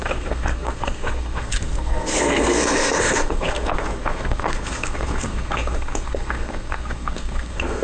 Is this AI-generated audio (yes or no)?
yes